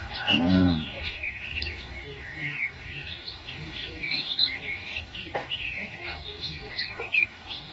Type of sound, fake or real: fake